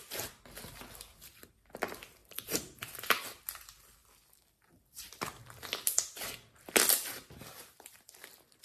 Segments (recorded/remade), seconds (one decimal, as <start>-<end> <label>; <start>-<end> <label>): 0.0-2.2 recorded; 2.2-3.2 remade; 3.2-8.6 recorded